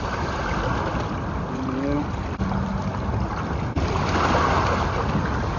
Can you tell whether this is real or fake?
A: real